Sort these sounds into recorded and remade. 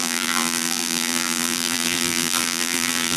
remade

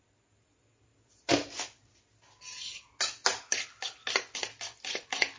recorded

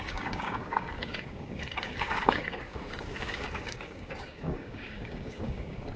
remade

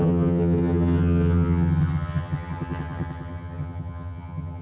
remade